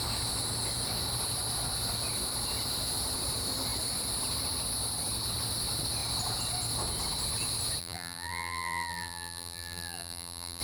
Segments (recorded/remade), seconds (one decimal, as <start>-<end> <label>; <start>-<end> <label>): 0.0-7.8 recorded; 7.8-10.6 remade